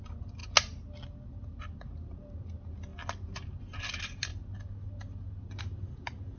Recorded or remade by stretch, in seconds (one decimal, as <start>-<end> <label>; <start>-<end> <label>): 0.0-6.4 recorded

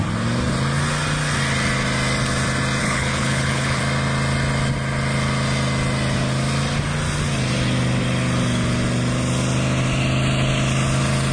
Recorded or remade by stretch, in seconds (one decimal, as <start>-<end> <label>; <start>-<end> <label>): 0.0-2.8 recorded; 2.8-3.8 remade; 3.8-11.3 recorded

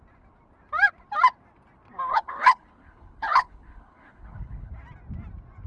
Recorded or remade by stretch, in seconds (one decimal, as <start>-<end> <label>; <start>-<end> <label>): 0.0-2.1 recorded; 2.1-4.7 remade; 4.7-5.7 recorded

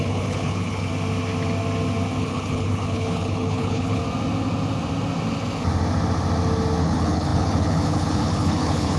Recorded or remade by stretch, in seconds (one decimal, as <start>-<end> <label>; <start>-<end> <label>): 0.0-0.9 remade; 0.9-2.2 recorded; 2.2-4.0 remade; 4.0-6.8 recorded; 6.8-9.0 remade

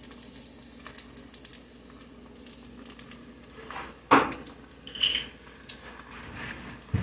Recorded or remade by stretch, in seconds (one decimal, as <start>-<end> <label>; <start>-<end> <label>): 0.0-7.0 recorded